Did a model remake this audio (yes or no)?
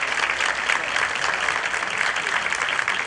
no